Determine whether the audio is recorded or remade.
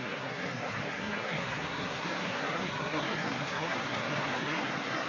remade